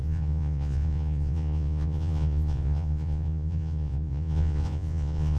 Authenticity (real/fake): fake